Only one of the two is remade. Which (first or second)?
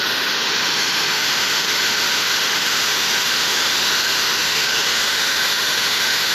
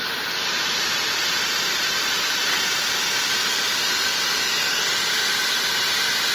first